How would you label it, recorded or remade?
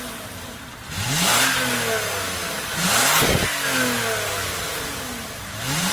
recorded